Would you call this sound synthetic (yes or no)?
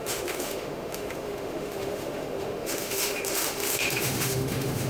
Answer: yes